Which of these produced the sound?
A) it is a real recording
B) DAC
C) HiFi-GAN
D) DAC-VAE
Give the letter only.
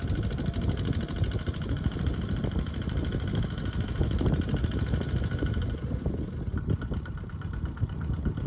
A